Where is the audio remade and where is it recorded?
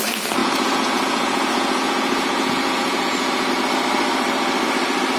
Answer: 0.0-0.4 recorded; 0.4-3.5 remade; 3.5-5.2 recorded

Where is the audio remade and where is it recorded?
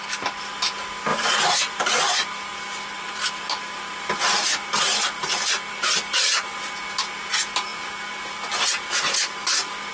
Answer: 0.0-1.1 recorded; 1.1-2.0 remade; 2.0-9.9 recorded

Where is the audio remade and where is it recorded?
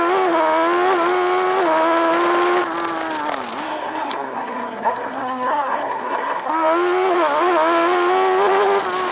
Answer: 0.0-3.6 recorded; 3.6-6.5 remade; 6.5-9.1 recorded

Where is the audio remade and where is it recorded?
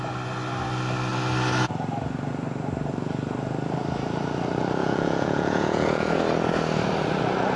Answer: 0.0-4.8 recorded; 4.8-6.2 remade; 6.2-7.6 recorded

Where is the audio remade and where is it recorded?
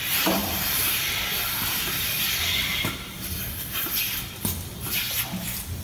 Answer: 0.0-5.8 remade